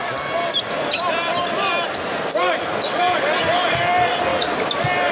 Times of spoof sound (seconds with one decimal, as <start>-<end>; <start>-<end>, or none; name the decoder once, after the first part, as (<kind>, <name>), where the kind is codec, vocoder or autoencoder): none